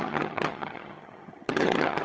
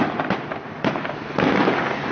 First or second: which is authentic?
second